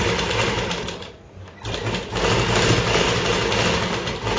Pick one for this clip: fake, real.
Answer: real